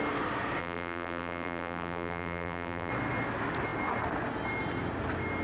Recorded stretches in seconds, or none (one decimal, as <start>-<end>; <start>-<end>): 0.0-0.6; 2.9-5.4

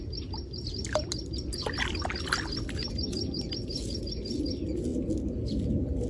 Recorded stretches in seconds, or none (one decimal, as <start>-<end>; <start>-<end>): 0.0-2.8; 4.0-6.1

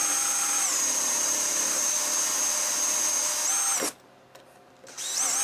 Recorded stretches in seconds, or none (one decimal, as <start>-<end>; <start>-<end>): 1.9-5.4